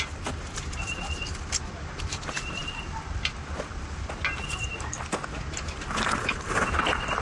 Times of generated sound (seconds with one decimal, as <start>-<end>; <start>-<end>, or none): none